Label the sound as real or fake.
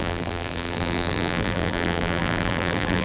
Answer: fake